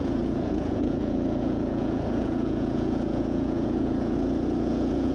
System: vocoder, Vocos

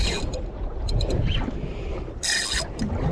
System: none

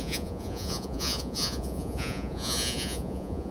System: vocoder, Vocos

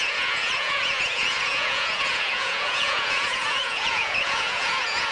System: vocoder, Vocos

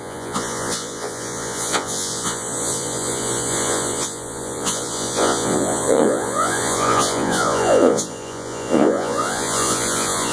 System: vocoder, Vocos